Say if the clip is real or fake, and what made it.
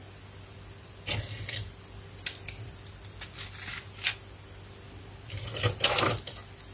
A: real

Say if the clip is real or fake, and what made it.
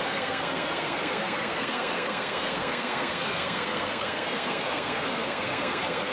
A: fake, codec, SNAC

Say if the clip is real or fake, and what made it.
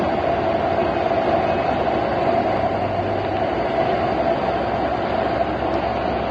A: real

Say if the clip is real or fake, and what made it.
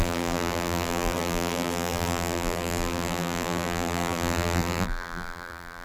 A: fake, vocoder, BigVGAN v2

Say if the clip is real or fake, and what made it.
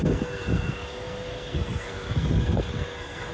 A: fake, codec, SNAC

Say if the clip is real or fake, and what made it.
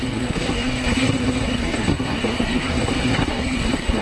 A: fake, codec, SNAC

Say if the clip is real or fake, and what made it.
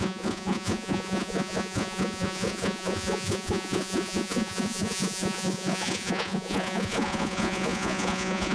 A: fake, vocoder, Vocos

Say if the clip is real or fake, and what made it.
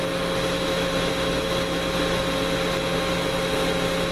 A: real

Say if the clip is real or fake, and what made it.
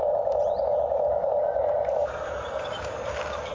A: real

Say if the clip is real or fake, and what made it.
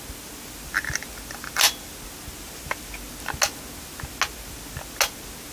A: real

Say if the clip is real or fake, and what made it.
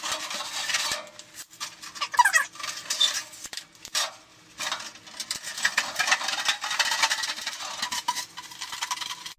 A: real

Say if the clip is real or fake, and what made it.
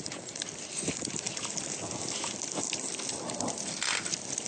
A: fake, vocoder, BigVGAN v2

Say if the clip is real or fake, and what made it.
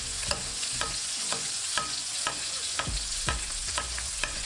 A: fake, vocoder, Vocos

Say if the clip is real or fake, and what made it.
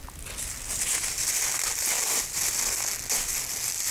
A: real